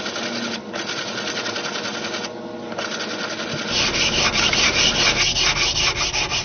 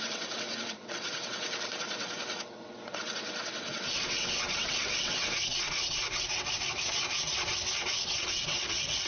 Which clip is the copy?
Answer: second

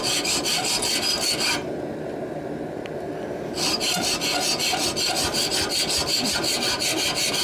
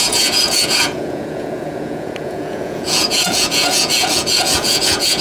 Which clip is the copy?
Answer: second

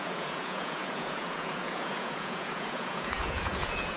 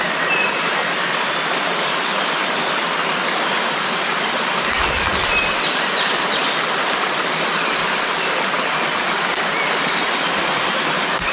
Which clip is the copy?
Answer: first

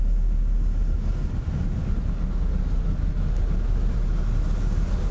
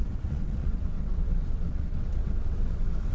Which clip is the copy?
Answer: second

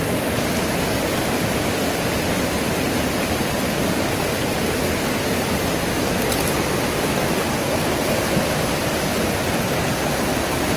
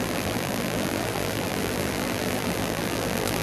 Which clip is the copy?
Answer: second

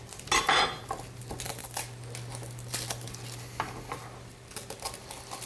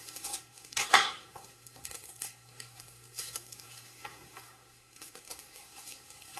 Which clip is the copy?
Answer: second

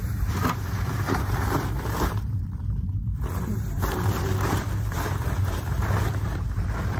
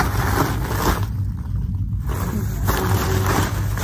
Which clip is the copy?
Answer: first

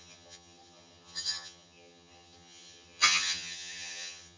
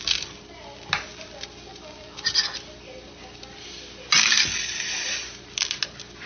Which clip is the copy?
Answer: first